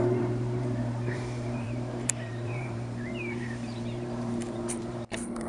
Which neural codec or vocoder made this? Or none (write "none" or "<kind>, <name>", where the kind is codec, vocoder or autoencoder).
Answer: vocoder, BigVGAN v2